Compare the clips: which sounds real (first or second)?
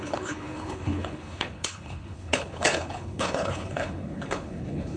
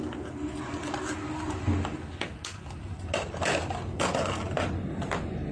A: second